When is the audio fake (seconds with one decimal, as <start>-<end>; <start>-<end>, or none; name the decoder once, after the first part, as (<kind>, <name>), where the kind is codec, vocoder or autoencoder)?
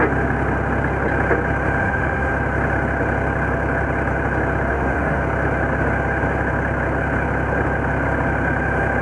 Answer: 1.8-2.3 (autoencoder, DAC-VAE); 4.7-5.2